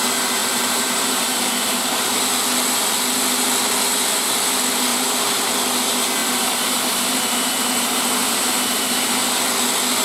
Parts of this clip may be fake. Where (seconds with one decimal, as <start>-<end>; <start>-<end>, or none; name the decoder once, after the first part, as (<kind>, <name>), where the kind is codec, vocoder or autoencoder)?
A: 0.4-2.2 (vocoder, BigVGAN v2); 4.9-5.5; 6.2-9.1